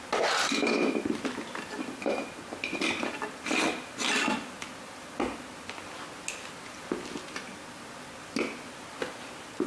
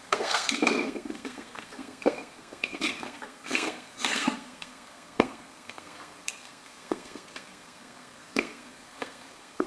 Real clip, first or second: first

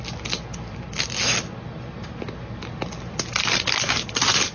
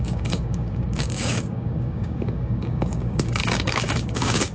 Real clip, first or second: first